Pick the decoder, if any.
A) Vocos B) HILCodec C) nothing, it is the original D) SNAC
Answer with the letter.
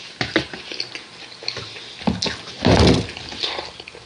C